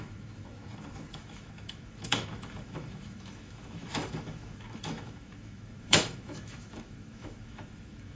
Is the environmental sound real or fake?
fake